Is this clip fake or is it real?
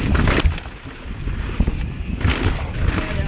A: real